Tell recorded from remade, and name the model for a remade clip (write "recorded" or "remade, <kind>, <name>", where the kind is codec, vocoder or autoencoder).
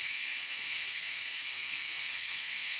remade, codec, SNAC